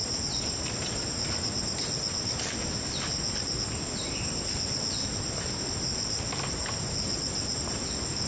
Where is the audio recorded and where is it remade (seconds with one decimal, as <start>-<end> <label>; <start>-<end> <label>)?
0.0-8.3 recorded